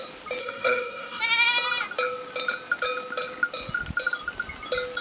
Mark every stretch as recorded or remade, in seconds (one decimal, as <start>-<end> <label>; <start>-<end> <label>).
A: 0.0-0.4 recorded; 0.4-1.2 remade; 1.2-5.0 recorded